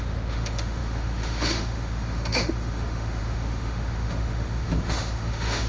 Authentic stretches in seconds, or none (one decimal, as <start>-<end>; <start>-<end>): none

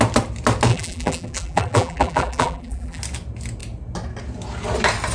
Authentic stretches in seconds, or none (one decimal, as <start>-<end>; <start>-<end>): 0.0-0.7; 3.0-5.1

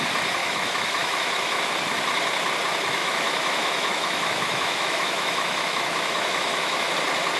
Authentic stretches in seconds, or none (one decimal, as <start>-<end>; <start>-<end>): 0.0-0.4; 1.6-3.0; 6.9-7.4